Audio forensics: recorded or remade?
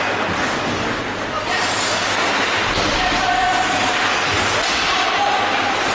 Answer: recorded